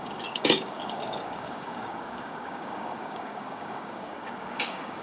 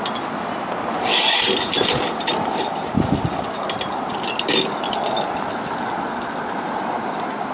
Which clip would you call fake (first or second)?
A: first